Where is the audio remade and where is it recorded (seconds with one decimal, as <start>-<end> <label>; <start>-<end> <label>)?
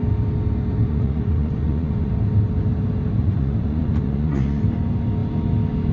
0.0-0.8 recorded; 0.8-2.1 remade; 2.1-3.2 recorded; 3.2-4.6 remade; 4.6-5.9 recorded